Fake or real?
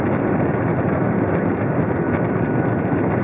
fake